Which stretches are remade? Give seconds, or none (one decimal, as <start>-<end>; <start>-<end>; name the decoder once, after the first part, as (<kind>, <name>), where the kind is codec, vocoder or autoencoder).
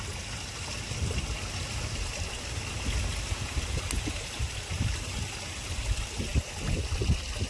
none